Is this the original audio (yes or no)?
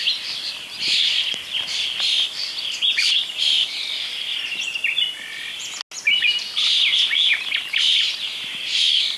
yes